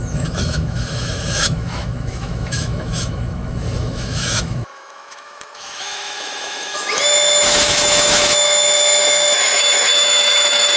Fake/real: fake